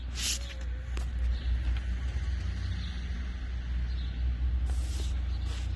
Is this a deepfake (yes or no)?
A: no